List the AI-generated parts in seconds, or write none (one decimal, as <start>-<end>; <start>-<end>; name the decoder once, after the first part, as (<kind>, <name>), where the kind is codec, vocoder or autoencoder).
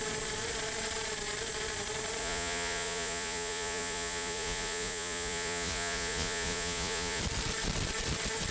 2.2-7.2 (vocoder, Vocos)